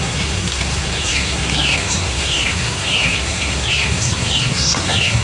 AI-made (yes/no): yes